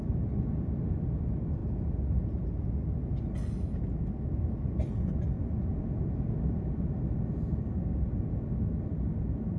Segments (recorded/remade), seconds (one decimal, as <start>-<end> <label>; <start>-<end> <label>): 0.0-9.6 recorded